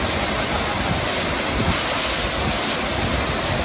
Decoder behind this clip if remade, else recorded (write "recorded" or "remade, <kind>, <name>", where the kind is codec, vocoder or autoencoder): recorded